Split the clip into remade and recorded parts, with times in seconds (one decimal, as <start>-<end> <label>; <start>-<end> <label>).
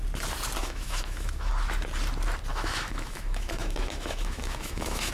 0.0-0.6 recorded; 0.6-1.5 remade; 1.5-2.5 recorded; 2.5-5.1 remade